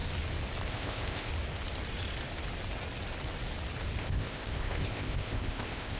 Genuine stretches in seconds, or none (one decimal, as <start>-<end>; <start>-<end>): 0.0-0.7; 1.3-4.0